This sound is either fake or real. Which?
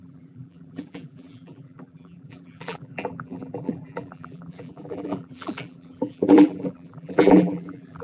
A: fake